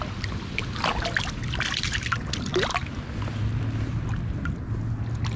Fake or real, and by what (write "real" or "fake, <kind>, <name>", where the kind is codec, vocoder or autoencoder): real